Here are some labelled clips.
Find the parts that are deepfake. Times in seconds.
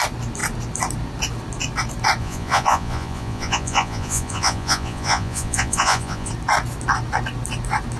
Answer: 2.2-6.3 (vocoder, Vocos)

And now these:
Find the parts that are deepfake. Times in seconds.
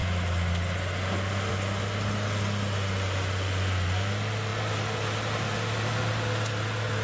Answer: none